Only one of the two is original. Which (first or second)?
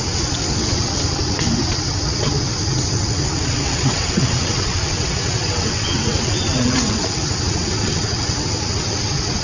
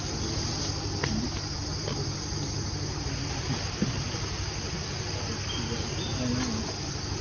second